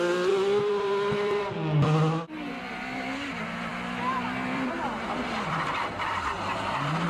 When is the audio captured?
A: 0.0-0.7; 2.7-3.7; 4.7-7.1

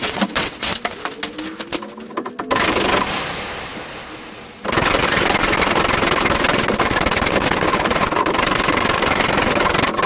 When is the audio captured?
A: 0.7-10.1

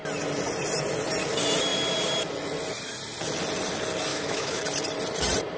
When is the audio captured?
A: 0.0-4.1; 4.6-5.6

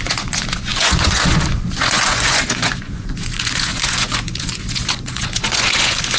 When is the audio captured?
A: none

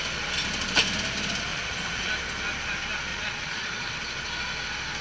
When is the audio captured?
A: 0.0-1.5; 2.1-3.1; 3.9-5.0

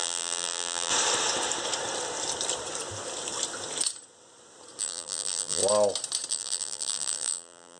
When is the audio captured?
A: 0.9-4.8; 5.6-6.3

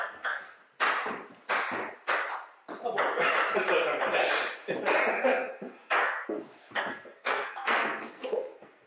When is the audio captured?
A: 0.6-5.1